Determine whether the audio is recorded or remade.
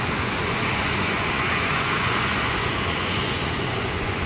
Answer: remade